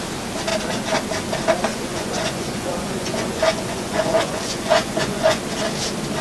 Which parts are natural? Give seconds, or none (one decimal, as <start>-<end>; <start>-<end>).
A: 0.0-1.7; 5.4-6.2